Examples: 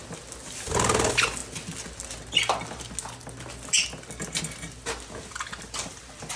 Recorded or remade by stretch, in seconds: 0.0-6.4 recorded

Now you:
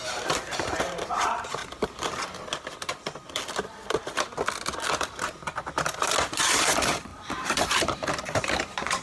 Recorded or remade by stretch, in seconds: 0.0-1.6 remade; 1.6-6.6 recorded; 6.6-9.0 remade